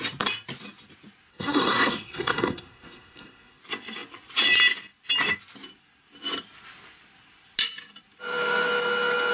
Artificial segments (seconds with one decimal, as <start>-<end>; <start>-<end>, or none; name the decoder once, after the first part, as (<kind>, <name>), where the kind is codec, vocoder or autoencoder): 1.3-3.6 (codec, SNAC)